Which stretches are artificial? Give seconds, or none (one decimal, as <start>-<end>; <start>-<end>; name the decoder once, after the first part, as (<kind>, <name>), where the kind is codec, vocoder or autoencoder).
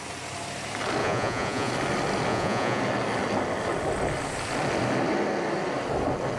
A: 1.0-1.7 (vocoder, Vocos); 2.3-2.8